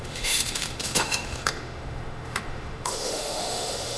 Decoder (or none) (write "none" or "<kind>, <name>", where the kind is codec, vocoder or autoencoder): autoencoder, DAC-VAE